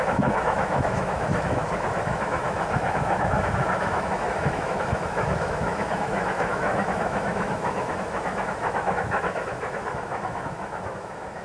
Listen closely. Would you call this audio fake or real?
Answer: fake